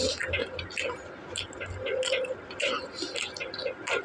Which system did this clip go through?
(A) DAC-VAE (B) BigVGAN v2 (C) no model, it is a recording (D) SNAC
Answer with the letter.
C